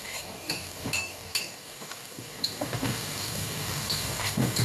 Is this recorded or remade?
remade